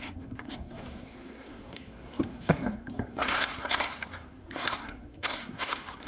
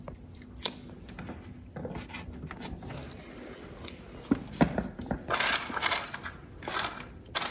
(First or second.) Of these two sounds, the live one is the second